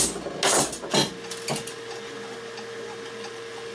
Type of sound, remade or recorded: recorded